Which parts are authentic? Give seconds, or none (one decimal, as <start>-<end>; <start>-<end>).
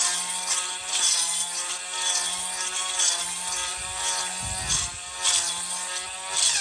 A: 0.0-6.6